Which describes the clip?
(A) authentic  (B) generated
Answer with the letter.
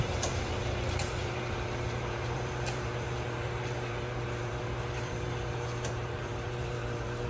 B